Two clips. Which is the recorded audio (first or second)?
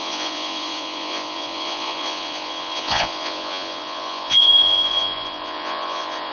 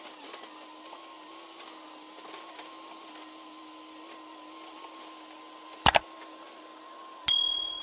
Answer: second